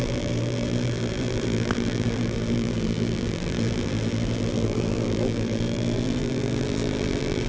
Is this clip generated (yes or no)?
yes